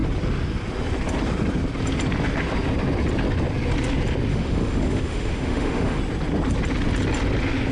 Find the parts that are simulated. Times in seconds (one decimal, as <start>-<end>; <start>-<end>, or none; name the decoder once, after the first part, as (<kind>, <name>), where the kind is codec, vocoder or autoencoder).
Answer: 4.3-6.0 (autoencoder, DAC-VAE)

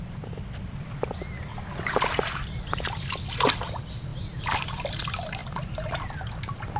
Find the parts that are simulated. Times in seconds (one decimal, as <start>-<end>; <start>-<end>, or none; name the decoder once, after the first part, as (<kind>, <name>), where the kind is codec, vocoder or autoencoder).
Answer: none